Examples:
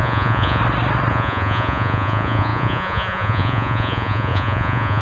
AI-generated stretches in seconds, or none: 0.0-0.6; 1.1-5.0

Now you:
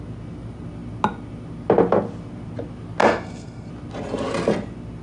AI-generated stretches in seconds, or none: 3.0-3.7